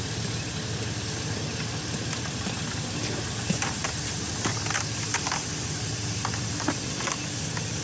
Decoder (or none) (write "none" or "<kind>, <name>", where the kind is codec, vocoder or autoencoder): none